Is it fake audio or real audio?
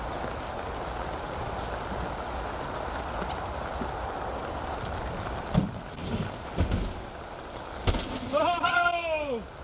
real